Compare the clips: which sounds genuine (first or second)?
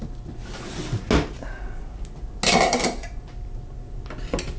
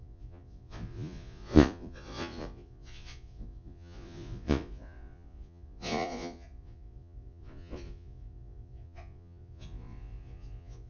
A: first